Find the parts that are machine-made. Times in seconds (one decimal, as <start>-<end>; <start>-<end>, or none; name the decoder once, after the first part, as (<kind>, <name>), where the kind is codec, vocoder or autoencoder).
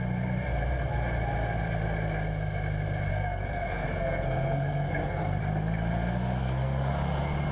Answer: 3.1-5.4 (codec, SNAC); 6.4-6.9